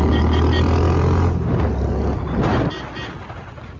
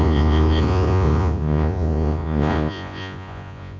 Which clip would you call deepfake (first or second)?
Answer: second